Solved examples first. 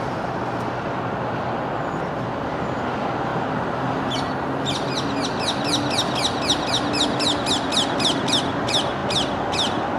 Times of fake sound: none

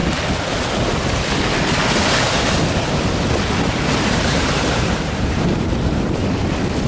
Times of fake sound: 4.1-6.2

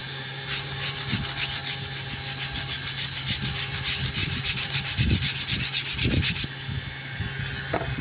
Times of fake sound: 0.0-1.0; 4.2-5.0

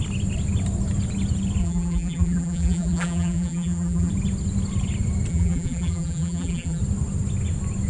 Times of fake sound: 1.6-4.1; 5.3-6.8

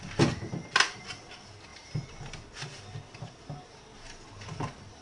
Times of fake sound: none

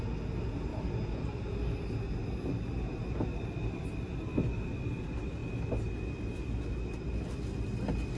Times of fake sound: none

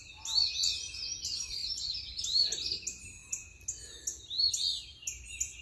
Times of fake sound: none

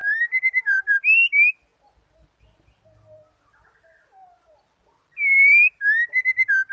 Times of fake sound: 0.0-1.0